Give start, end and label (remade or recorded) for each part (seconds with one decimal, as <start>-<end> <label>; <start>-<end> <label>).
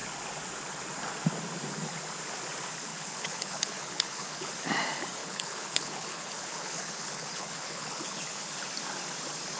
0.0-2.9 recorded; 2.9-4.5 remade; 4.5-5.2 recorded; 5.2-8.5 remade; 8.5-9.6 recorded